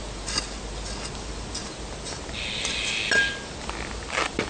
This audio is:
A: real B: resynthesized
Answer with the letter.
A